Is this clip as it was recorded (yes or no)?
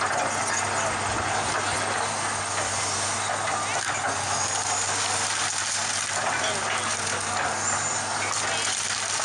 yes